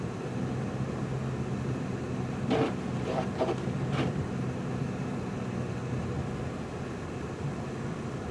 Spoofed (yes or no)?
no